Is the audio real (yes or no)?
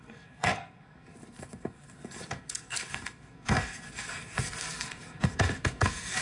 no